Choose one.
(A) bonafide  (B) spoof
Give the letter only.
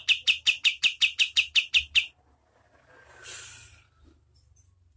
B